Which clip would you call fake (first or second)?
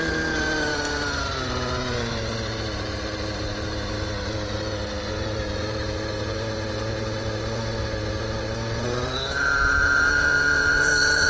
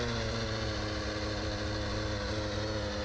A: first